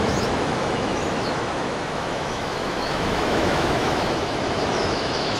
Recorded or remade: remade